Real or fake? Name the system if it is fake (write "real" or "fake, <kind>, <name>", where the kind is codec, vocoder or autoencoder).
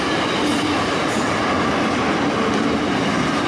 real